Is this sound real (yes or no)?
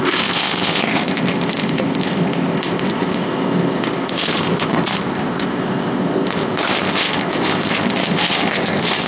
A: no